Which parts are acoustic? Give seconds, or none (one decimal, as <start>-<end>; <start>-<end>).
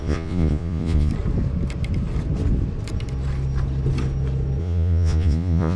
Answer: 1.1-4.6